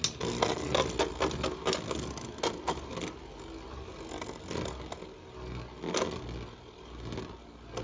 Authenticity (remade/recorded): recorded